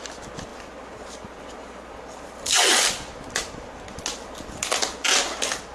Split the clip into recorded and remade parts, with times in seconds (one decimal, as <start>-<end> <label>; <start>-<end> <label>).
0.0-5.7 recorded